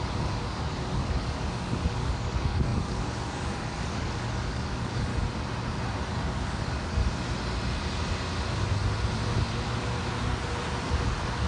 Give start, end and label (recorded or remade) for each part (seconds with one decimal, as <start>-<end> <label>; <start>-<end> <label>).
0.0-5.1 remade; 5.1-6.1 recorded; 6.1-7.0 remade; 7.0-10.8 recorded; 10.8-11.5 remade